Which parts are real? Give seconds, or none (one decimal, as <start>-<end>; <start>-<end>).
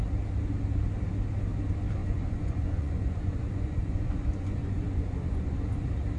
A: 0.0-2.0; 5.7-6.2